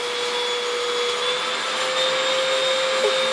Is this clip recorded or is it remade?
recorded